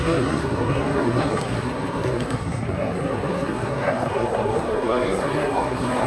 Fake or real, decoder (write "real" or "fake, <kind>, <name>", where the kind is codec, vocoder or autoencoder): fake, codec, SNAC